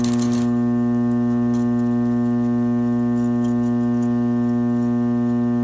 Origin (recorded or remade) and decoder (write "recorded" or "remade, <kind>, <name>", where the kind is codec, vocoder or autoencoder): recorded